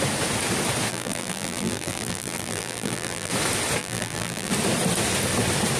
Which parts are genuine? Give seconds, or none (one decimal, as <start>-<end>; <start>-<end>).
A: 0.0-0.9; 3.3-3.8; 4.5-5.8

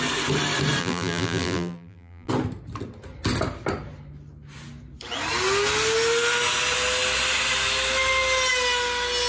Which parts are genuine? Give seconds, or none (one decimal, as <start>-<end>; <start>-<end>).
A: 0.0-0.8; 2.3-9.3

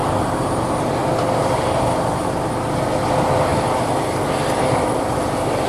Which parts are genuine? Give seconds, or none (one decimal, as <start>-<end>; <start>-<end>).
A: 0.0-1.0; 2.5-5.7